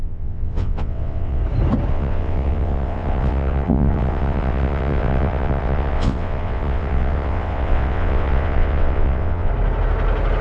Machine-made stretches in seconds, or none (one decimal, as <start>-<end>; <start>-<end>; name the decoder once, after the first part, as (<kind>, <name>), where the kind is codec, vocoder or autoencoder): 0.0-1.4 (vocoder, WaveNeXt); 1.9-9.5